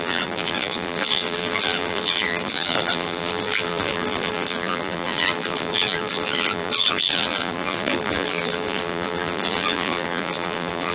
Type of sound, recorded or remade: remade